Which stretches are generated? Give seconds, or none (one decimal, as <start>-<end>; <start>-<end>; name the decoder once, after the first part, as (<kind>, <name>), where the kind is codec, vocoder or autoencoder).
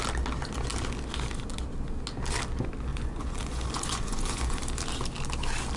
2.9-4.6 (vocoder, Vocos)